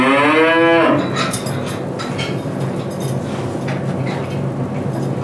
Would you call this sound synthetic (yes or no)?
no